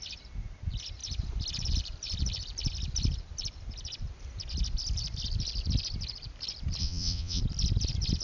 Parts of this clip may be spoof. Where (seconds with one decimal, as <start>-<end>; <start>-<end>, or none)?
6.8-7.4